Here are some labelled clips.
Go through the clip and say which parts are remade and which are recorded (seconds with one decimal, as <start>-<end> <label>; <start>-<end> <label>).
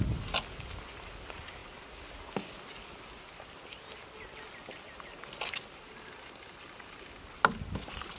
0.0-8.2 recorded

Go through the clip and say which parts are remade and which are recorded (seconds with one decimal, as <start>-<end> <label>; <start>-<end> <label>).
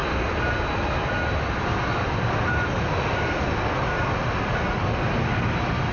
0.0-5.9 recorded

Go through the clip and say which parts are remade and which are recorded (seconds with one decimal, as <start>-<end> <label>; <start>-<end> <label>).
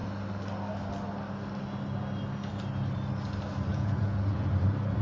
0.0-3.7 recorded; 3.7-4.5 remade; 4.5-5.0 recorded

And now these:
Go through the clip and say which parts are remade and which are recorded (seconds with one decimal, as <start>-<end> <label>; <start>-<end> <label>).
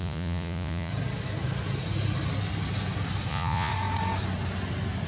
0.0-0.9 remade; 0.9-3.3 recorded; 3.3-3.7 remade; 3.7-5.1 recorded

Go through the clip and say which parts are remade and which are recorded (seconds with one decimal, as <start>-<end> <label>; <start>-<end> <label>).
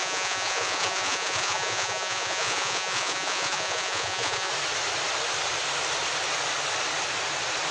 0.0-4.5 remade; 4.5-7.7 recorded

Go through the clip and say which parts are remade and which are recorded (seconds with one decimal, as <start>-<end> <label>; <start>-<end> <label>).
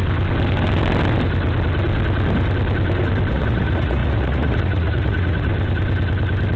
0.0-3.3 recorded; 3.3-5.5 remade; 5.5-6.6 recorded